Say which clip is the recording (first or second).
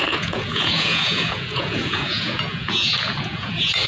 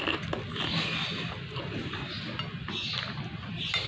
second